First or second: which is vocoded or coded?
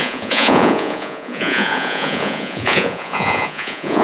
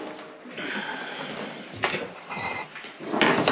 first